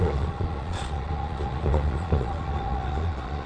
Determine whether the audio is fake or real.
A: fake